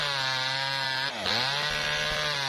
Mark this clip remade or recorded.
recorded